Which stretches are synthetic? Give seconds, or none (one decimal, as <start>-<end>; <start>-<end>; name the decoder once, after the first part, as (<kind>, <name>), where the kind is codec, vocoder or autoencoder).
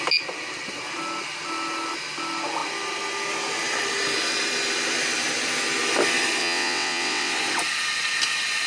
6.4-7.3 (vocoder, WaveNeXt)